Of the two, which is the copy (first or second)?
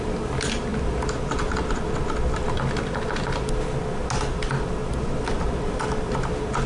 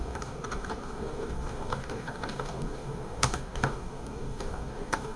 second